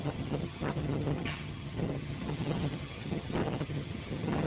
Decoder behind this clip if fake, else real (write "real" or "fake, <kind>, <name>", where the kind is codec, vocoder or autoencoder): fake, vocoder, HiFi-GAN